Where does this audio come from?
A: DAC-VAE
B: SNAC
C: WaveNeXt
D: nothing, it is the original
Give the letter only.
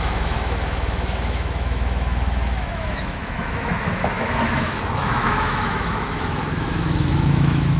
A